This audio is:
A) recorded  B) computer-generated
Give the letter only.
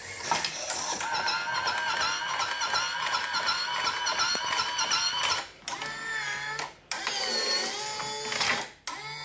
A